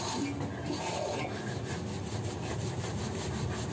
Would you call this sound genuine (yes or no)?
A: yes